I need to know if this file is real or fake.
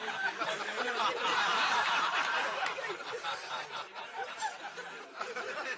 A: fake